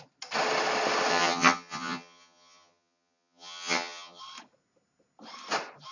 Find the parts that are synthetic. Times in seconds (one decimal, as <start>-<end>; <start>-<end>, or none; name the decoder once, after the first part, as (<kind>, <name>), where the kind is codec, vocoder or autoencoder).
1.1-4.2 (vocoder, HiFi-GAN)